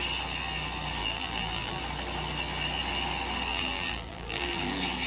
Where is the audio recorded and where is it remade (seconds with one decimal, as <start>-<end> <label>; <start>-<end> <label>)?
0.0-1.0 recorded; 1.0-1.8 remade; 1.8-3.5 recorded; 3.5-4.6 remade; 4.6-5.1 recorded